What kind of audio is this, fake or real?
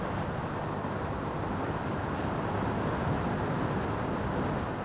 real